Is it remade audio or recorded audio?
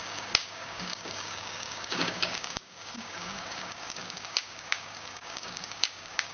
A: remade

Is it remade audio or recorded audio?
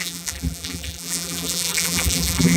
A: remade